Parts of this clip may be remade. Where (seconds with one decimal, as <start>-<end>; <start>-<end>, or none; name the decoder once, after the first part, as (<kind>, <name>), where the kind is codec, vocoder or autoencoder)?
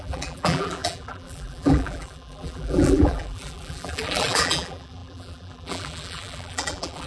0.0-7.1 (vocoder, BigVGAN v2)